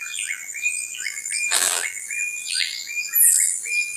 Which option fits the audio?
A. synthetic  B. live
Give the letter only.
A